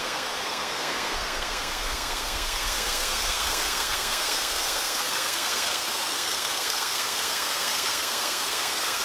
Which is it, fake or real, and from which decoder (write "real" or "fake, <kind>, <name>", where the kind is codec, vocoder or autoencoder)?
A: fake, codec, SNAC